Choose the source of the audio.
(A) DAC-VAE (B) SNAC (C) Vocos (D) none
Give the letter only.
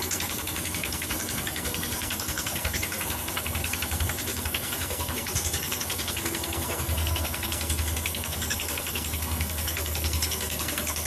B